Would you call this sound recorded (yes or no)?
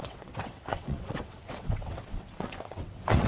no